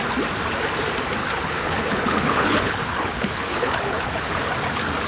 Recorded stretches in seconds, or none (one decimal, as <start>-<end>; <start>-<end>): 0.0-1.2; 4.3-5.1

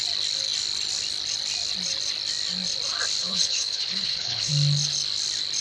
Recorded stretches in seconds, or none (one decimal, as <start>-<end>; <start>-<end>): 0.0-3.2; 4.5-5.6

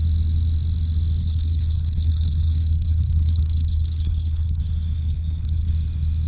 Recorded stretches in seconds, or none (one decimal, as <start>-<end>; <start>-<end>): 0.0-1.2; 4.6-5.0; 5.7-6.3